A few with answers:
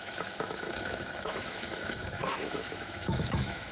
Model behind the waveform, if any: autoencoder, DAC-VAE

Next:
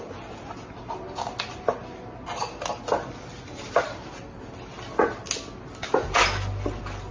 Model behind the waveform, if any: none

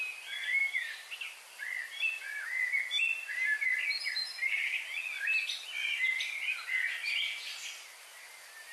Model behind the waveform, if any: none